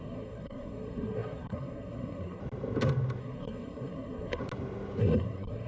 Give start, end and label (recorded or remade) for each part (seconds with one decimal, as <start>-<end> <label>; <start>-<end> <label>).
0.0-2.4 remade; 2.4-3.2 recorded; 3.2-4.4 remade; 4.4-5.0 recorded; 5.0-5.7 remade

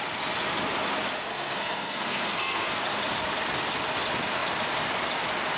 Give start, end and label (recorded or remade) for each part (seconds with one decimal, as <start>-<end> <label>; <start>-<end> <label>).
0.0-1.3 recorded; 1.3-2.8 remade; 2.8-5.6 recorded

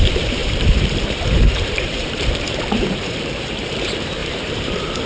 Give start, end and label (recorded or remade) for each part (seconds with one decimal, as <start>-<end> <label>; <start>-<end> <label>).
0.0-5.1 remade

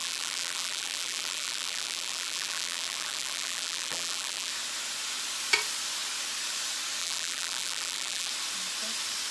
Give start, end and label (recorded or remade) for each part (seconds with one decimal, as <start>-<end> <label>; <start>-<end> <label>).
0.0-4.5 remade; 4.5-7.0 recorded; 7.0-8.3 remade; 8.3-9.3 recorded